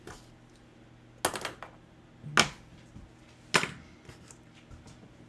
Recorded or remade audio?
recorded